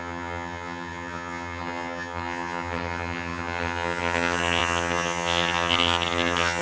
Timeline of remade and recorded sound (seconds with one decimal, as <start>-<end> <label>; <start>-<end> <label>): 0.0-6.6 remade